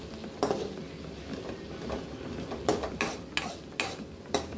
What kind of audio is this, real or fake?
real